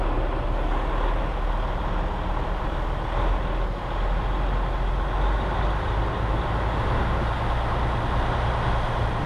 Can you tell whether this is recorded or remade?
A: recorded